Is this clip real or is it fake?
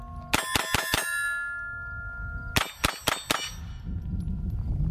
real